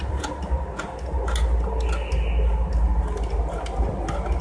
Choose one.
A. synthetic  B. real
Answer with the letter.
B